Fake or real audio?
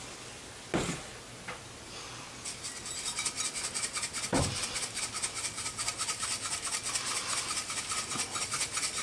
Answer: real